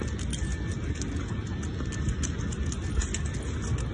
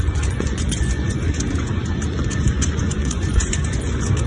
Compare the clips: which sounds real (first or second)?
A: first